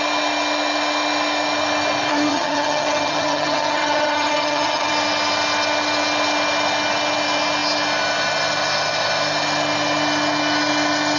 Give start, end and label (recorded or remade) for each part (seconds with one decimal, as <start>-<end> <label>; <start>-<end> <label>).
0.0-2.3 recorded; 2.3-4.9 remade; 4.9-11.2 recorded